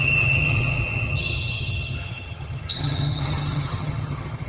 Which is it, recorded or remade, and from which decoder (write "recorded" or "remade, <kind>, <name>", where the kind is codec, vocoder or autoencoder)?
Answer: remade, vocoder, HiFi-GAN